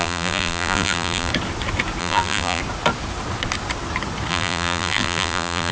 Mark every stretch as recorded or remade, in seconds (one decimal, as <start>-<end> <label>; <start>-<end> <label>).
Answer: 0.0-1.3 remade; 1.3-2.0 recorded; 2.0-2.6 remade; 2.6-4.3 recorded; 4.3-5.7 remade